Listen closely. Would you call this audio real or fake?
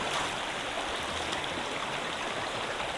real